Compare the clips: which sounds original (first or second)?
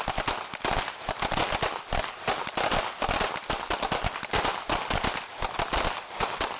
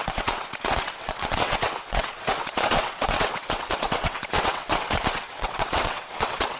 first